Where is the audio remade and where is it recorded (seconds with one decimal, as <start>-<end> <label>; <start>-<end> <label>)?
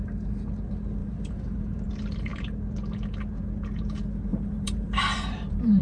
0.0-1.0 recorded; 1.0-1.9 remade; 1.9-4.3 recorded; 4.3-5.8 remade